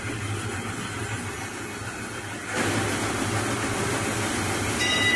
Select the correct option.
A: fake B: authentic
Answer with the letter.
B